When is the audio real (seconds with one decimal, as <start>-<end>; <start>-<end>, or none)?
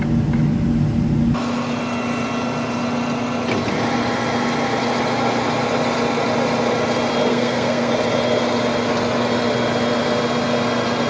0.0-7.3; 7.9-11.1